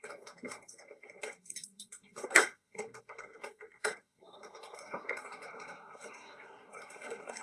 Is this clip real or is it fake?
fake